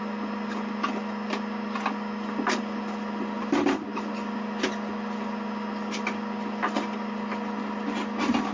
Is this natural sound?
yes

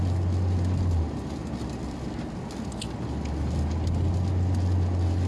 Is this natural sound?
yes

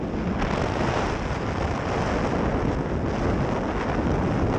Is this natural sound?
yes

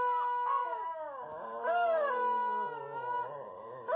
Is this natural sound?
yes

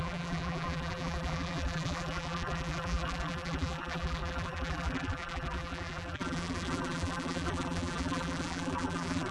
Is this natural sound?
no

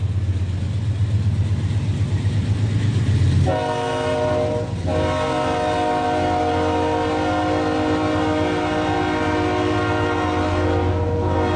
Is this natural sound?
yes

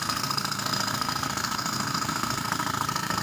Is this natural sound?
no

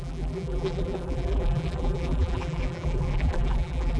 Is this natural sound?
no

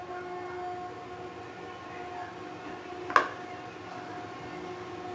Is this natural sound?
yes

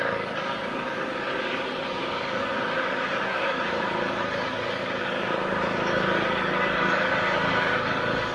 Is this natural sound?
no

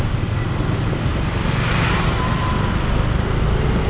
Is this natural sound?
yes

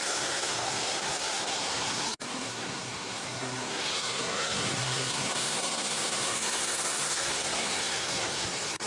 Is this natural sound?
no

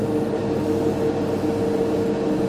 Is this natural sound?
yes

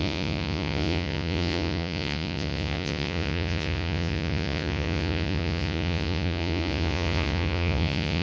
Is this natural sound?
no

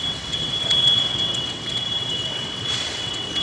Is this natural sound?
no